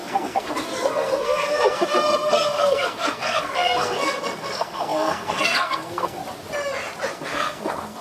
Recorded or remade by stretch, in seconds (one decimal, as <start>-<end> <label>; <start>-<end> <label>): 0.0-6.2 remade; 6.2-7.1 recorded; 7.1-8.0 remade